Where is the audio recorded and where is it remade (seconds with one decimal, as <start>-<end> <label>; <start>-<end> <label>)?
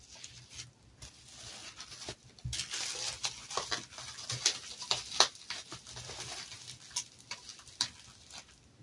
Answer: 0.0-8.8 recorded